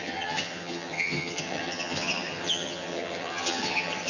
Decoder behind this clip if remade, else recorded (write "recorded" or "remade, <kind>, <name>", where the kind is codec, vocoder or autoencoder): remade, vocoder, HiFi-GAN